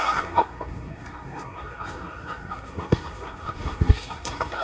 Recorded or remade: remade